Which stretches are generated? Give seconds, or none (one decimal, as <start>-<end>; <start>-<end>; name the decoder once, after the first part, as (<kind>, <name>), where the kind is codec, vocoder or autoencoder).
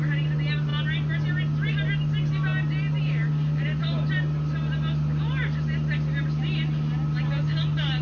none